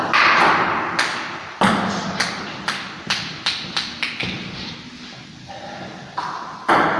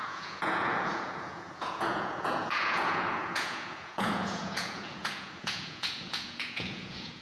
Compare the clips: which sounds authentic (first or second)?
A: first